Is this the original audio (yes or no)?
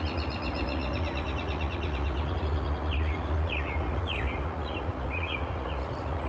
no